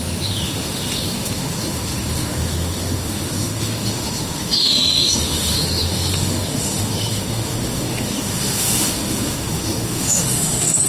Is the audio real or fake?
fake